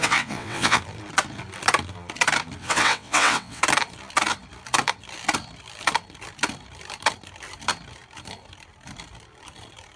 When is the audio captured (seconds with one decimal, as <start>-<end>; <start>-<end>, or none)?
0.8-2.6; 3.6-10.0